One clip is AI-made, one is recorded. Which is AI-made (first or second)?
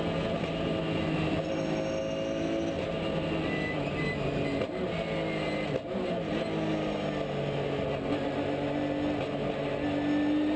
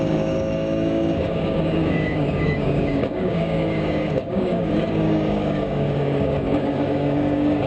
second